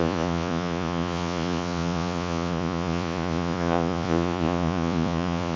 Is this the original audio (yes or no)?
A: no